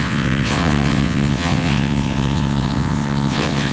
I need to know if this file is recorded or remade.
remade